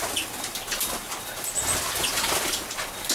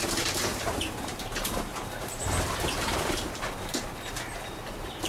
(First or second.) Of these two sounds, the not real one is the second